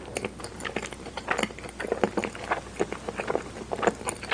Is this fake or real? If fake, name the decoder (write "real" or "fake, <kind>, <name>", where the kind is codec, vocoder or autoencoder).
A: real